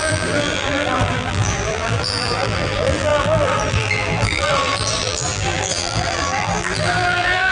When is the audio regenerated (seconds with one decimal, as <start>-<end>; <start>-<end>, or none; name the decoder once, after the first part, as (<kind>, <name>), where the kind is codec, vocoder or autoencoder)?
0.0-7.5 (vocoder, BigVGAN v2)